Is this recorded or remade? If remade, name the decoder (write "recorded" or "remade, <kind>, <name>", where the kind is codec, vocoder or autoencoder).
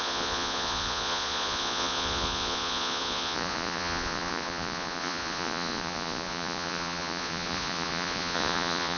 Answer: remade, vocoder, Vocos